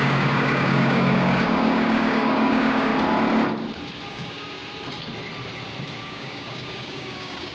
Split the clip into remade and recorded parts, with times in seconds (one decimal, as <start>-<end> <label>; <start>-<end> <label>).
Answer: 0.0-2.9 remade; 2.9-4.1 recorded; 4.1-4.6 remade; 4.6-6.0 recorded; 6.0-7.5 remade